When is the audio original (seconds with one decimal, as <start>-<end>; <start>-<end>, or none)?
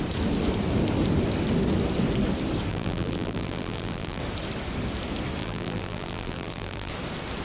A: 0.0-2.7; 4.2-5.4; 6.9-7.4